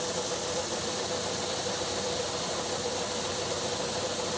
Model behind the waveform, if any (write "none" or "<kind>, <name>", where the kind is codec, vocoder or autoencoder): none